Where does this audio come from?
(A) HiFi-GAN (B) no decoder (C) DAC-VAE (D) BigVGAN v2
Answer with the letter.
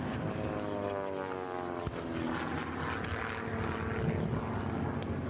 B